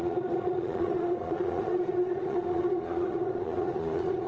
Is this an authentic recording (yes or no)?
no